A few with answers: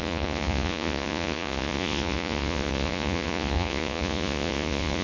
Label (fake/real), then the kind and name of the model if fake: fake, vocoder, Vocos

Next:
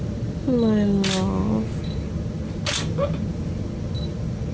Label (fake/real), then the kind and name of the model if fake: real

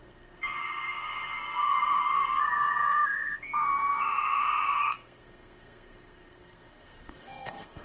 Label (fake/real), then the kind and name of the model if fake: fake, codec, SNAC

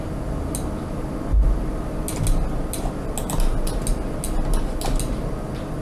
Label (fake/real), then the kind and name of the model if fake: real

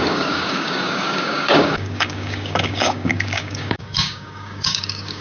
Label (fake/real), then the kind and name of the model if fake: fake, codec, DAC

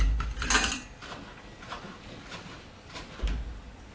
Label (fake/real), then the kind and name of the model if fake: real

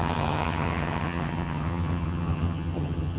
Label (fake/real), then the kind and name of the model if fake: fake, vocoder, HiFi-GAN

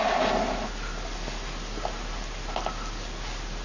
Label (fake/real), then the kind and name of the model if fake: real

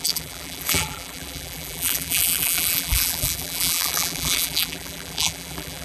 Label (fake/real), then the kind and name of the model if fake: fake, vocoder, BigVGAN v2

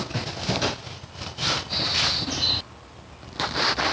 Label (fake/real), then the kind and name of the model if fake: real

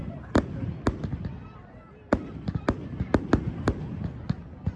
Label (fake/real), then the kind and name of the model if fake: real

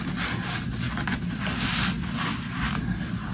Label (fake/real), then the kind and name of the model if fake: real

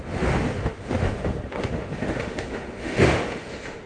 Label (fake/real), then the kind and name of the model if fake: fake, autoencoder, DAC-VAE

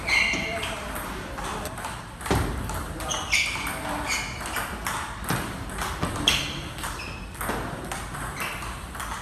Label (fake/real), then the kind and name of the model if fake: real